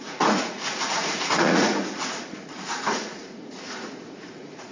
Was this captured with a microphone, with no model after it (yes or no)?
no